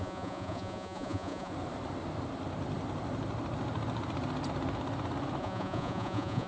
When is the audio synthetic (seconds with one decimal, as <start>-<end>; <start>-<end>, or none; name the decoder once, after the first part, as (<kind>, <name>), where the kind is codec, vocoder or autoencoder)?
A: 0.0-1.5 (vocoder, Vocos); 5.4-6.5